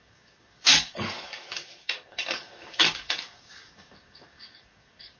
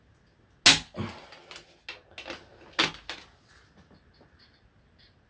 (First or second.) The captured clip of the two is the second